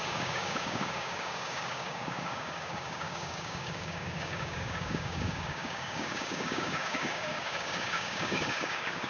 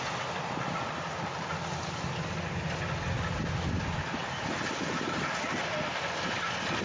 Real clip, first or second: second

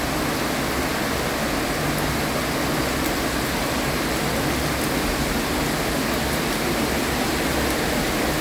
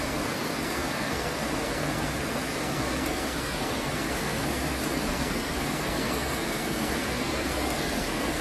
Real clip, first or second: first